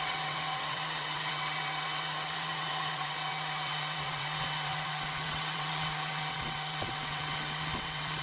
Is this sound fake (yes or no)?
yes